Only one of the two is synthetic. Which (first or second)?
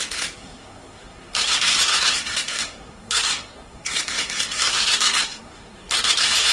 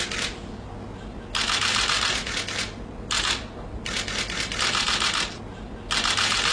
first